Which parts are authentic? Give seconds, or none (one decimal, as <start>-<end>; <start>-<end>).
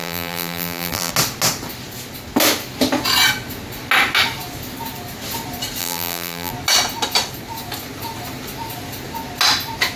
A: 1.1-5.8; 6.5-10.0